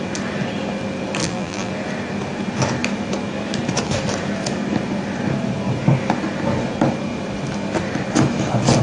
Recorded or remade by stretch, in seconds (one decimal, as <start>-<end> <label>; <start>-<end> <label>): 0.0-1.2 recorded; 1.2-1.7 remade; 1.7-8.8 recorded